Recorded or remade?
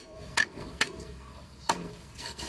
remade